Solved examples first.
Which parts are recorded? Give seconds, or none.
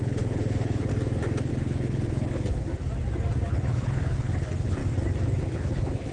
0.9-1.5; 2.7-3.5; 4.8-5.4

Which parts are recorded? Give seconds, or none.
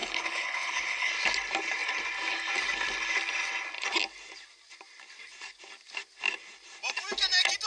1.1-7.7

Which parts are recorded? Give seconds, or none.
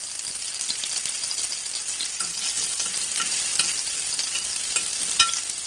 0.0-2.3; 2.9-5.7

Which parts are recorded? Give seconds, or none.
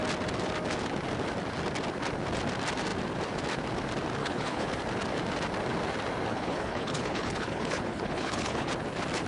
0.0-4.2; 4.7-6.3; 8.7-9.3